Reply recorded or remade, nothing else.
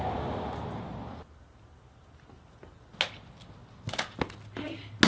recorded